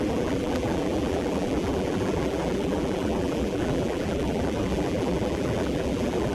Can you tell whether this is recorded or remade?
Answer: remade